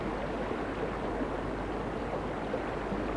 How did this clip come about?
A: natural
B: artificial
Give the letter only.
A